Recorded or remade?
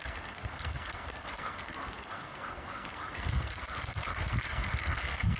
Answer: remade